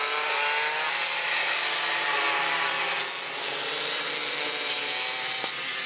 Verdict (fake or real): real